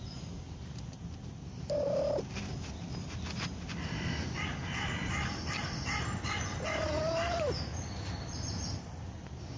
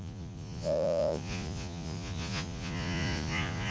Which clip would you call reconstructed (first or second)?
second